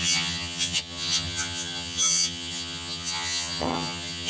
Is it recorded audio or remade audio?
remade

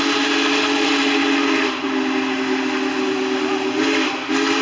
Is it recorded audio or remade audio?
recorded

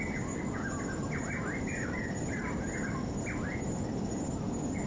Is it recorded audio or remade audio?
recorded